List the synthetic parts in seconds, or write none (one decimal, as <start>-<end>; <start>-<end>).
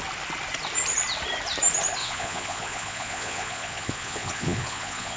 2.0-5.2